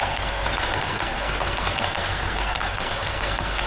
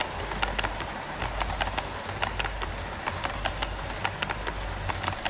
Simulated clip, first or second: first